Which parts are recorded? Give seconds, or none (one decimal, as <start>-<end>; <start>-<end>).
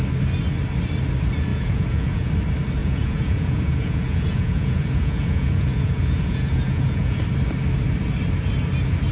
0.0-1.5; 2.3-2.8; 7.2-9.1